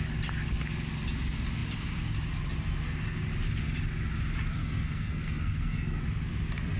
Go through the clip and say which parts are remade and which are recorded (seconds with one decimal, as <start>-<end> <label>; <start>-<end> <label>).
0.0-4.6 recorded; 4.6-6.0 remade; 6.0-6.8 recorded